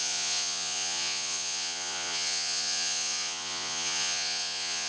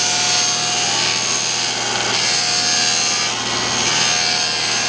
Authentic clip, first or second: second